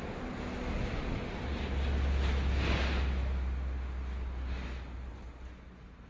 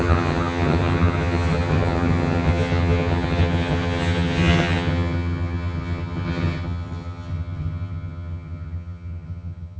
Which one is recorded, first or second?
first